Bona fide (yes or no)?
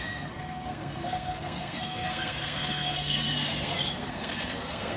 no